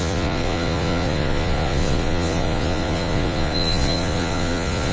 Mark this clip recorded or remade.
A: remade